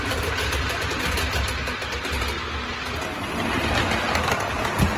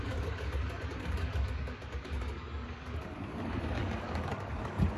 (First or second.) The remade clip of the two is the second